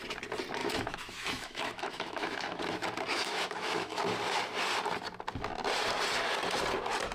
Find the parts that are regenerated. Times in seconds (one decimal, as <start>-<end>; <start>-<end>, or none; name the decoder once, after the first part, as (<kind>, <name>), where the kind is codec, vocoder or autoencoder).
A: 0.6-2.6 (autoencoder, DAC-VAE); 3.1-4.0